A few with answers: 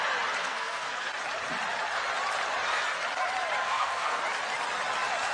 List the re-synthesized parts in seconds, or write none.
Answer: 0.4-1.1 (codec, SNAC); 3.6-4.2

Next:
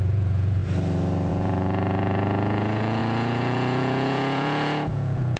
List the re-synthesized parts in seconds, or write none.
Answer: 0.0-0.6 (vocoder, Vocos); 1.3-5.4

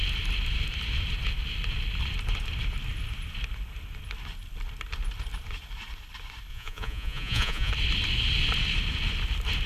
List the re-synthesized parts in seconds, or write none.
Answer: 6.5-7.7 (vocoder, Vocos)

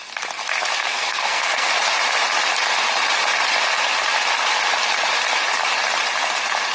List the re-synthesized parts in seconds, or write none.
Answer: 0.8-1.7 (codec, SNAC)

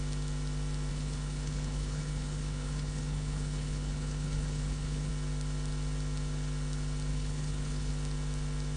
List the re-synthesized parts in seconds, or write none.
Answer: 0.9-5.1 (codec, HILCodec); 7.1-7.9

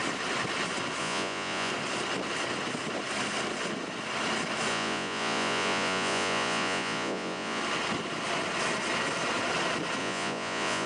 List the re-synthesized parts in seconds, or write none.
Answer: 1.0-1.7 (vocoder, Vocos); 4.7-7.6; 10.0-10.9

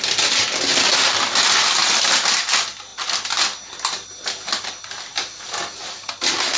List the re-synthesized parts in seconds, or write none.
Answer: none

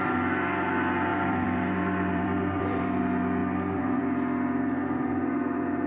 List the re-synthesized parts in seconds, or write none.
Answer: 1.1-3.0 (vocoder, BigVGAN v2); 3.4-4.0